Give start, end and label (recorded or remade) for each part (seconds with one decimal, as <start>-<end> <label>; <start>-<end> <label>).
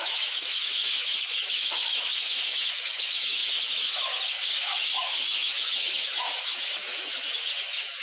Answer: 0.0-8.0 remade